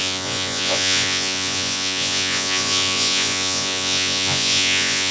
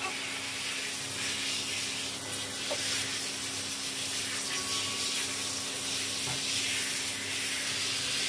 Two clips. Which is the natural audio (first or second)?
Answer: second